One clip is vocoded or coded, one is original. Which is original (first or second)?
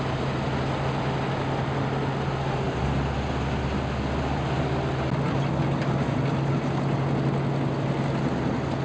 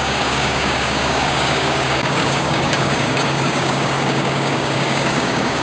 first